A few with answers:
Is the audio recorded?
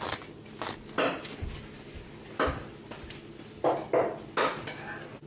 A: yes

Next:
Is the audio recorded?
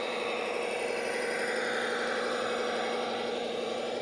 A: no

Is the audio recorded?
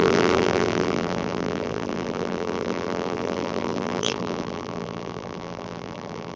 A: no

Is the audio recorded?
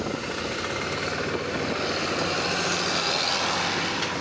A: yes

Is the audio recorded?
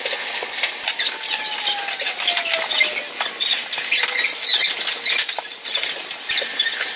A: yes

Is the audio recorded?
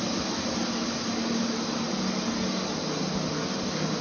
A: yes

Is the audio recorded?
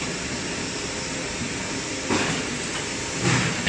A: yes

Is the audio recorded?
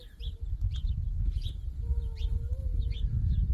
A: no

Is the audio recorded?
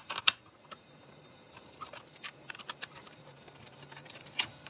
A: no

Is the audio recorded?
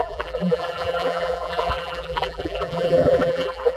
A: no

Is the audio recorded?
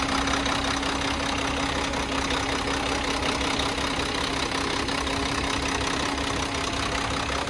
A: yes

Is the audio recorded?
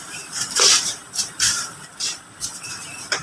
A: no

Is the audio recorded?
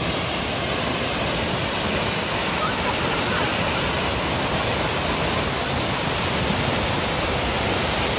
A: no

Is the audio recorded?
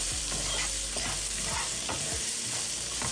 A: yes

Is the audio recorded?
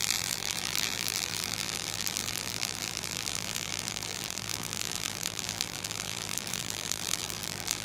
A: no